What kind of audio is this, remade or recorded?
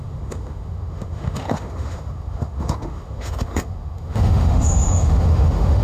remade